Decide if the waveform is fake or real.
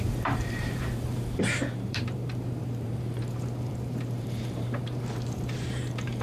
fake